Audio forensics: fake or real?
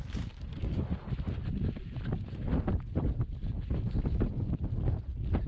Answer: real